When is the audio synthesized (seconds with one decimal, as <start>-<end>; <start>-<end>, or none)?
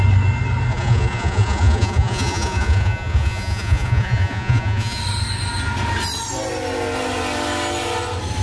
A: 0.7-5.0